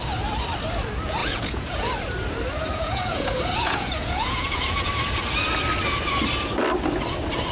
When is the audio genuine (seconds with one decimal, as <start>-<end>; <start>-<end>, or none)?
0.0-1.2; 1.9-2.7; 4.9-7.5